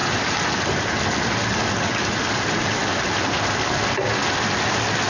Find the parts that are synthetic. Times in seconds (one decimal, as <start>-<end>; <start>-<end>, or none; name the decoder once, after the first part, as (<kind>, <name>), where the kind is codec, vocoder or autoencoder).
none

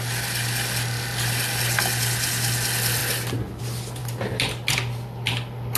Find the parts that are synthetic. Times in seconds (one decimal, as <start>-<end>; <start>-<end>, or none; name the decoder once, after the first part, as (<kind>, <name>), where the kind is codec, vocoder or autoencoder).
none

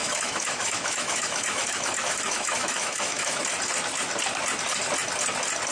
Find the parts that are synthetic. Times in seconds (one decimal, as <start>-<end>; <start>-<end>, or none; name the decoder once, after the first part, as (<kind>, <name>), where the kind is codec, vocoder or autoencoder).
0.0-3.4 (autoencoder, DAC-VAE)

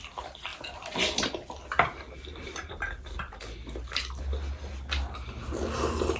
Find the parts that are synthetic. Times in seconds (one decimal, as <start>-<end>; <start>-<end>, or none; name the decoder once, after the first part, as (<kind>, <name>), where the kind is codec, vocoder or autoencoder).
none

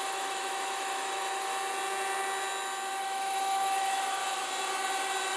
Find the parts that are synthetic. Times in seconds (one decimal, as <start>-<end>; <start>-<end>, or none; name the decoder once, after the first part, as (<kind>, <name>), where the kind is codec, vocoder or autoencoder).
0.0-1.5 (autoencoder, DAC-VAE); 3.0-4.2